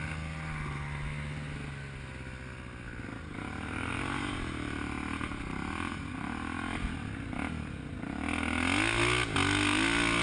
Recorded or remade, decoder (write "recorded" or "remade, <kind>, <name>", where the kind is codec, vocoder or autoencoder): recorded